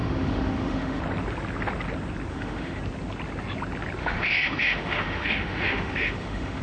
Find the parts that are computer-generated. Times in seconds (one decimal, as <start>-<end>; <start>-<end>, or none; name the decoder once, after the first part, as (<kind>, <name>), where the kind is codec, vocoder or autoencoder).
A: 0.0-1.0 (autoencoder, DAC-VAE); 2.3-2.8; 4.0-6.6

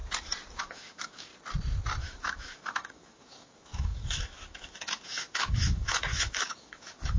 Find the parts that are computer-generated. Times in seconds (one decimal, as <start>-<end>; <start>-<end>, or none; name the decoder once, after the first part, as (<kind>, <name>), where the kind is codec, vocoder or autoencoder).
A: 0.6-1.3 (autoencoder, DAC-VAE); 2.0-7.2

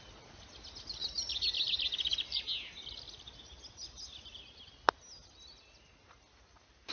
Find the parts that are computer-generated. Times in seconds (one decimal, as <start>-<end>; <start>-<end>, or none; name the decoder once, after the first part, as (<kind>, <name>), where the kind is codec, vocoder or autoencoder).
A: none

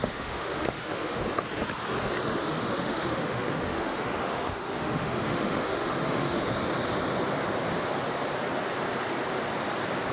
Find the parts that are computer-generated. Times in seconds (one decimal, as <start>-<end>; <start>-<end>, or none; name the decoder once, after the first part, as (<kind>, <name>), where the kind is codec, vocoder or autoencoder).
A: 0.0-1.2 (autoencoder, DAC-VAE); 2.4-6.4

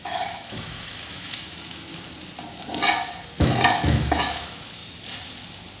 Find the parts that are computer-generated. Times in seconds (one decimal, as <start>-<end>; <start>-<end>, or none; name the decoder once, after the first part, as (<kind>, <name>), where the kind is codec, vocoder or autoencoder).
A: 0.0-1.9 (autoencoder, DAC-VAE); 3.4-4.8